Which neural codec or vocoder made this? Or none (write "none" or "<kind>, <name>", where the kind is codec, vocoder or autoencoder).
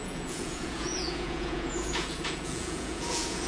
vocoder, Vocos